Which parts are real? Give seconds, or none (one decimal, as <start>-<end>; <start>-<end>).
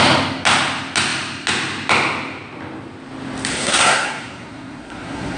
0.0-3.5